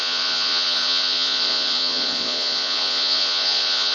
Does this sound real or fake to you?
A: fake